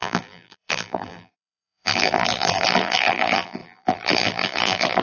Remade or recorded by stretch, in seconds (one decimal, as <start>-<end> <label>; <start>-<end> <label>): 0.0-5.0 remade